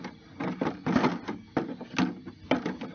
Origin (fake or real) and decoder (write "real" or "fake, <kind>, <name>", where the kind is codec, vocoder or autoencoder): real